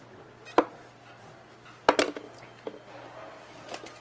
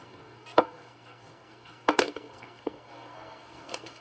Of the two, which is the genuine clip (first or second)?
first